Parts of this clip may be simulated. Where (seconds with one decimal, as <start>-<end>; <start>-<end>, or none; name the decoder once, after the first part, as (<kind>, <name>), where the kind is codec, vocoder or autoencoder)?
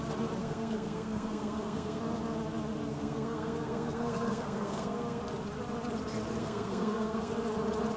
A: 0.4-2.0 (codec, SNAC); 2.9-5.2; 6.4-7.3